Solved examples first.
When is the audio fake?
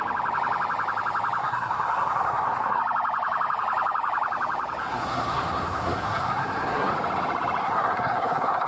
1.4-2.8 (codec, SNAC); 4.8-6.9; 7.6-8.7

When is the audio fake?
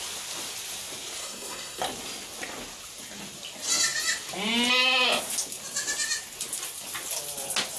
1.2-1.8 (codec, SNAC)